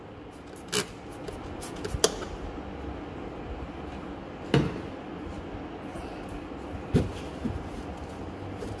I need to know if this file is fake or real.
real